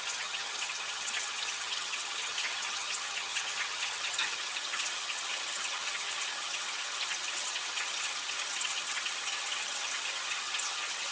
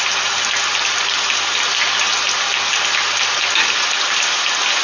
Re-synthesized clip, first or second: first